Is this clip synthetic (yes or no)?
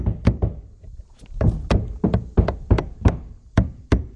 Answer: no